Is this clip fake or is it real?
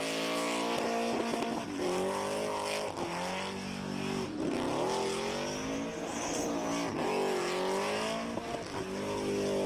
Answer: real